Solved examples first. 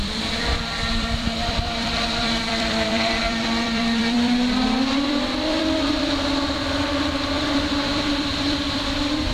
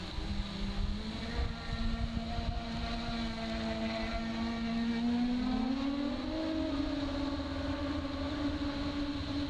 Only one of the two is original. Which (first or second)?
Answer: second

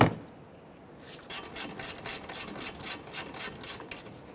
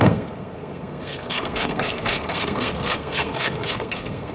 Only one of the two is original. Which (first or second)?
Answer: first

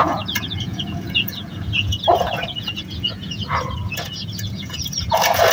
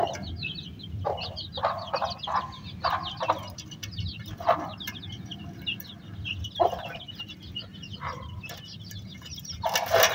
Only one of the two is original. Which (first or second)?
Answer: second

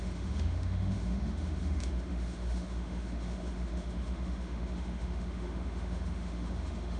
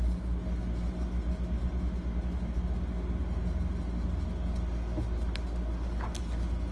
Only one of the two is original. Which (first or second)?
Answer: second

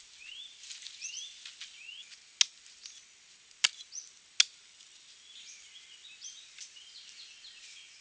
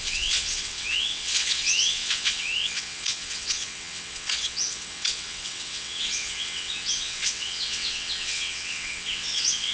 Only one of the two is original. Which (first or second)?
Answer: first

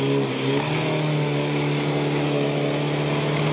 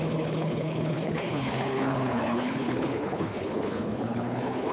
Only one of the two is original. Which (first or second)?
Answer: first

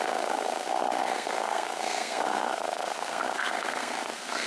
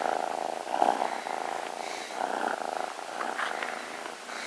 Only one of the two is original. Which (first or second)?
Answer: second